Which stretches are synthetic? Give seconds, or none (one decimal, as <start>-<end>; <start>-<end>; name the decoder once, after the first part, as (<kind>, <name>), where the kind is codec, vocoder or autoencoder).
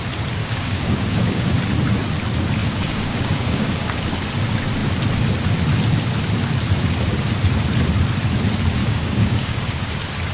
0.4-1.6 (codec, DAC); 2.6-4.0; 8.8-9.9